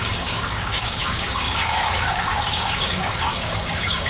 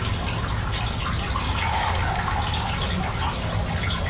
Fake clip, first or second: first